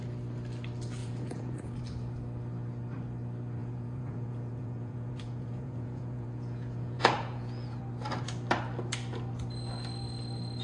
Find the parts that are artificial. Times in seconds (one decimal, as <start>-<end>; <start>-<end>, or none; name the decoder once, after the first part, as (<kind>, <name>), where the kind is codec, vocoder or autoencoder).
1.0-1.8 (vocoder, Vocos); 3.6-7.8